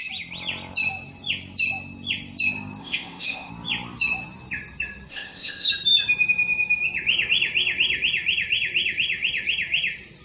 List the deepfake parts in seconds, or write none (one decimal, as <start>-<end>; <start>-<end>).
2.8-3.5; 5.1-5.7